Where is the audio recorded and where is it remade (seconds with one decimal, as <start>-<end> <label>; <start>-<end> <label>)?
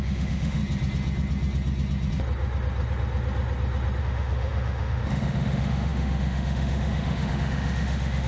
0.0-0.6 remade; 0.6-4.0 recorded; 4.0-8.3 remade